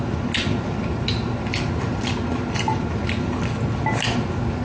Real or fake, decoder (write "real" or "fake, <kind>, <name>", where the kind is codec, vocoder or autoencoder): real